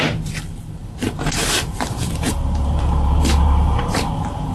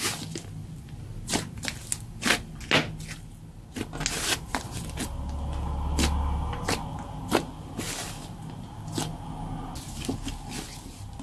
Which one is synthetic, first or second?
first